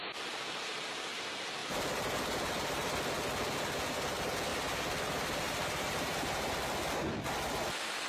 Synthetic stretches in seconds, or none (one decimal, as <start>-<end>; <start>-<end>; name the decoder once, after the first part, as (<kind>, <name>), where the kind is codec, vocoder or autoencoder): 4.5-6.5 (vocoder, BigVGAN v2)